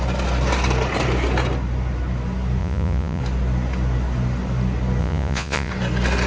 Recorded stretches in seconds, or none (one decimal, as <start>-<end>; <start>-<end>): 0.0-2.6; 3.2-5.0; 5.7-6.3